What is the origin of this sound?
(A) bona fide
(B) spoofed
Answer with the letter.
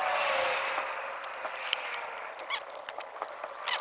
B